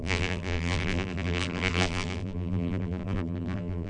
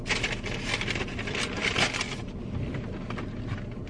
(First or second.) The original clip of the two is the second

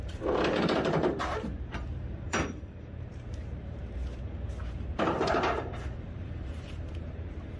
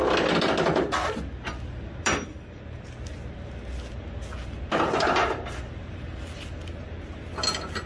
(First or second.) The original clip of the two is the second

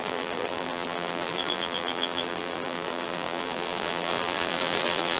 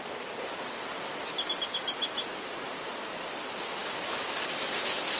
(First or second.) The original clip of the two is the second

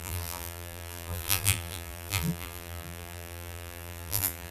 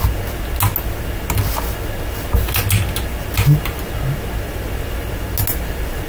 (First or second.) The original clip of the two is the second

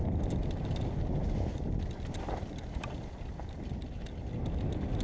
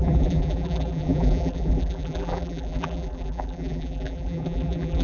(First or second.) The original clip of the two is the first